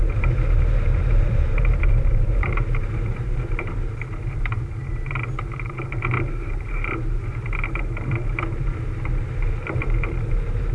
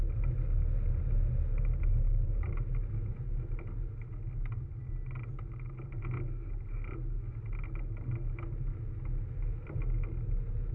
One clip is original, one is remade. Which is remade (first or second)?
first